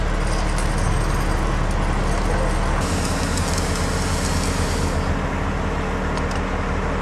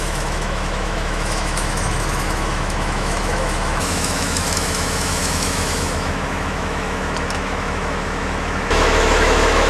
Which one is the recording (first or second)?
first